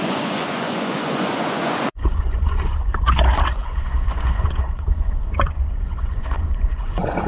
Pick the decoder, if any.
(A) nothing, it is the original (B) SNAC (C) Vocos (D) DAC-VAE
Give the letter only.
C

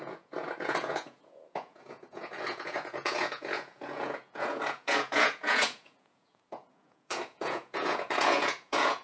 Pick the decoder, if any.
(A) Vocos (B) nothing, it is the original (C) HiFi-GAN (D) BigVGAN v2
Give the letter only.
A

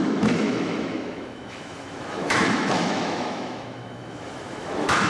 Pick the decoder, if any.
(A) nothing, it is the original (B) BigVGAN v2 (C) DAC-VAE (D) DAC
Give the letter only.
C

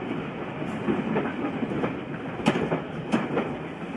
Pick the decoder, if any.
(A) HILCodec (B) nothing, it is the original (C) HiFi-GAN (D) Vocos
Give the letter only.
B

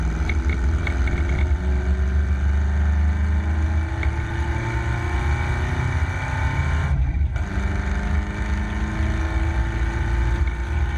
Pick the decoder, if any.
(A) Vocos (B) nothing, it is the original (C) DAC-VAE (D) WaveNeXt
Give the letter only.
B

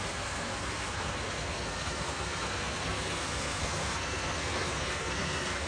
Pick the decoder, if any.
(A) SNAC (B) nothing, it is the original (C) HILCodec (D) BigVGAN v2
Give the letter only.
A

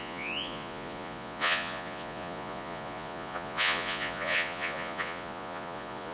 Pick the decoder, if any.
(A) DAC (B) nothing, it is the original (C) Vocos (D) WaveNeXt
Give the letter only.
C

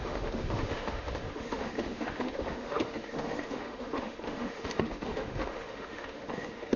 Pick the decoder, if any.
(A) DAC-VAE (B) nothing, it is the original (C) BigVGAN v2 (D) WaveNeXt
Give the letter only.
A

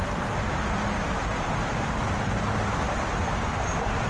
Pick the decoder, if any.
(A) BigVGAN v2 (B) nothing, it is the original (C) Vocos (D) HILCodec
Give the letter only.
A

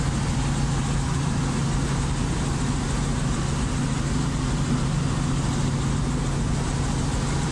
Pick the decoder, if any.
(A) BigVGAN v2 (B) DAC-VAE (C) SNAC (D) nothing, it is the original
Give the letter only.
D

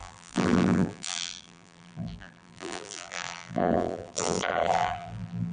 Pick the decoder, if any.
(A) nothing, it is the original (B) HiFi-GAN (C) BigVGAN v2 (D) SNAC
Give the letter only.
C